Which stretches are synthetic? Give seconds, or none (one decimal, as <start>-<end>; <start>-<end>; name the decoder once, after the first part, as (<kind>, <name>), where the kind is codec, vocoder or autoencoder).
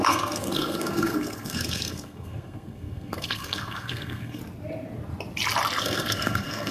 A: 0.0-4.4 (codec, SNAC); 5.8-6.7